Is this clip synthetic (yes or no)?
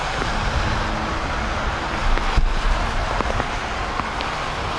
no